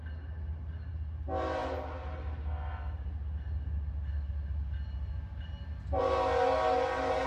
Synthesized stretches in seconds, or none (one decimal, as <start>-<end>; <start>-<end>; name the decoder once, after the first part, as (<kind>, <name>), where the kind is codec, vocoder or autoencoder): none